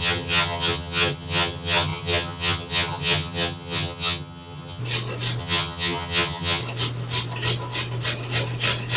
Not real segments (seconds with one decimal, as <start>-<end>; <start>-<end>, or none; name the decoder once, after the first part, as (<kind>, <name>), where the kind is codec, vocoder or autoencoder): 0.0-4.8 (vocoder, HiFi-GAN); 5.4-6.6